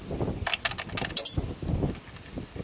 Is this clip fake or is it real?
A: real